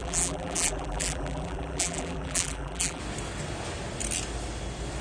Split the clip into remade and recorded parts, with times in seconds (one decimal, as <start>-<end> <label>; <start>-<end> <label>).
0.0-3.0 remade; 3.0-5.0 recorded